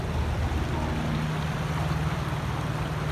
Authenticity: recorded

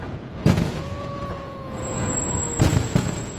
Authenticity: remade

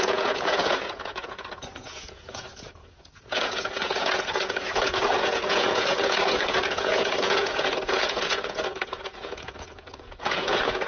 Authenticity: remade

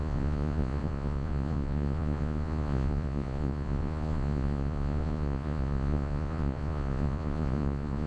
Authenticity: remade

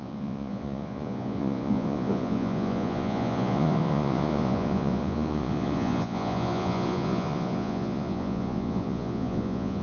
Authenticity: remade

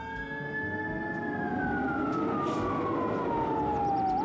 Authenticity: recorded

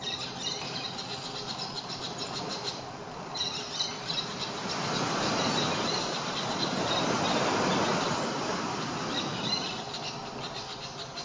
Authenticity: recorded